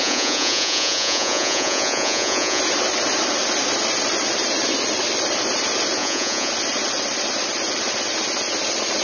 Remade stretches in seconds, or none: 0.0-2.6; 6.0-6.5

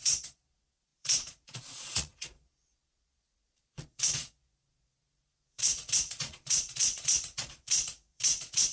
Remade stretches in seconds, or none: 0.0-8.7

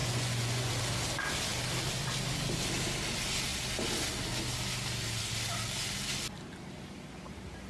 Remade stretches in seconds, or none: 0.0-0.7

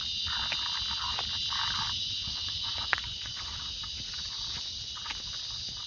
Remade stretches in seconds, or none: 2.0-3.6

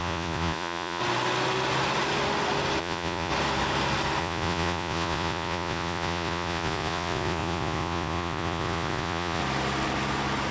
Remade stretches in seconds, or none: 0.0-1.0; 2.8-3.3; 4.2-9.4

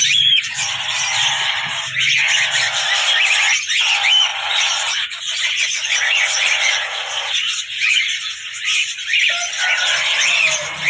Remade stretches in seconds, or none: 4.3-7.9